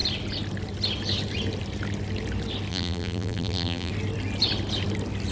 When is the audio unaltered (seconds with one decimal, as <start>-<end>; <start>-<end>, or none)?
0.0-2.7; 3.9-5.3